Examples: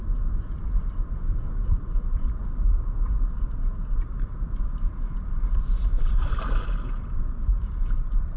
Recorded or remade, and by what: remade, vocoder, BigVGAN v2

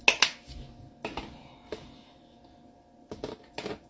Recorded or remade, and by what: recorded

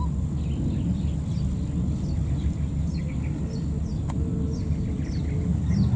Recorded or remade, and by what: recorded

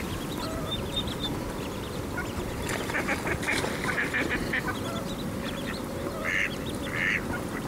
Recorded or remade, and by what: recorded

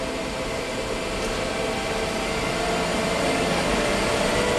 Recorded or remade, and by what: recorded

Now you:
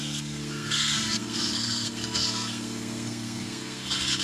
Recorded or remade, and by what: remade, codec, SNAC